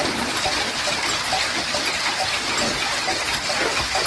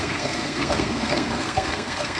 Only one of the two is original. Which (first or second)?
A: first